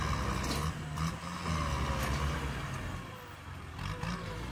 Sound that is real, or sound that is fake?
real